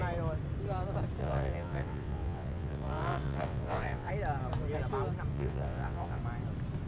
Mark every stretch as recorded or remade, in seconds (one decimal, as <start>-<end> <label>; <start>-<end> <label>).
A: 0.0-1.2 recorded; 1.2-4.1 remade; 4.1-5.3 recorded; 5.3-6.2 remade; 6.2-6.9 recorded